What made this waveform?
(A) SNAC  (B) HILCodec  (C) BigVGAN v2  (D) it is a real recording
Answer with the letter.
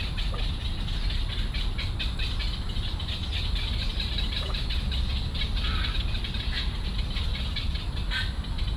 D